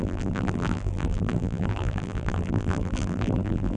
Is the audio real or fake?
fake